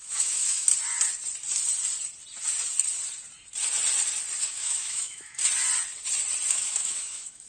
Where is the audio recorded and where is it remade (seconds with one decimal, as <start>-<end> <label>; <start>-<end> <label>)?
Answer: 0.0-0.7 remade; 0.7-4.4 recorded; 4.4-5.4 remade; 5.4-6.5 recorded; 6.5-7.5 remade